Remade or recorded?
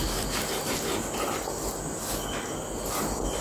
recorded